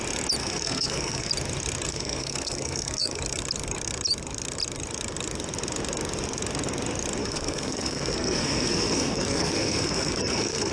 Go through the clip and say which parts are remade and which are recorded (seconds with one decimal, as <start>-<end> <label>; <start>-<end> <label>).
0.0-0.4 recorded; 0.4-1.3 remade; 1.3-1.9 recorded; 1.9-3.2 remade; 3.2-7.2 recorded; 7.2-10.7 remade